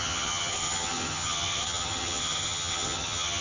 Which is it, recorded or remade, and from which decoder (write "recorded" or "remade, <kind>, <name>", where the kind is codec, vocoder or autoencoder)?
remade, vocoder, HiFi-GAN